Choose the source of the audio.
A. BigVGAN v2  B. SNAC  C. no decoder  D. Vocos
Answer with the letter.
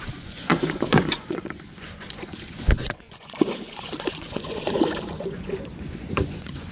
D